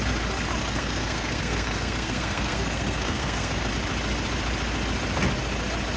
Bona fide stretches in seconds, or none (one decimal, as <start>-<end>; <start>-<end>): 0.0-0.6; 3.7-6.0